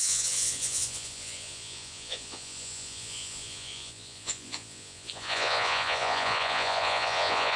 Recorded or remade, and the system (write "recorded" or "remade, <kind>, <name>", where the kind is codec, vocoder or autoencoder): remade, vocoder, Vocos